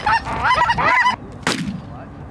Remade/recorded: recorded